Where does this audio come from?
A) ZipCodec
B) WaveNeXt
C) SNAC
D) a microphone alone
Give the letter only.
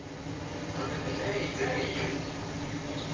D